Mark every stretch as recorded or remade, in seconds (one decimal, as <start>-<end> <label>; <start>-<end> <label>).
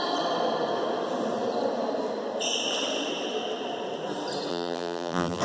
0.0-4.5 recorded; 4.5-5.4 remade